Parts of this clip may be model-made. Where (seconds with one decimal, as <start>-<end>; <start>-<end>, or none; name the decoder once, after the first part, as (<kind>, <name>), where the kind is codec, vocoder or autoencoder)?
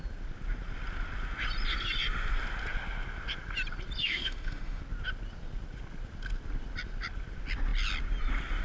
4.0-4.8 (autoencoder, DAC-VAE)